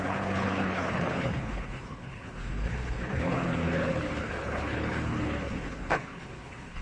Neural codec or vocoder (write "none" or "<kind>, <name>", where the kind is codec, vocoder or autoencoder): codec, HILCodec